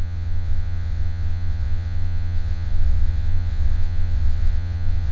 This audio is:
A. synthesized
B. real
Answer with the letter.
A